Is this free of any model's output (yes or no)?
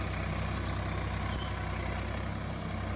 yes